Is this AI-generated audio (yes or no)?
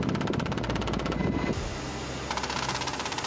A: no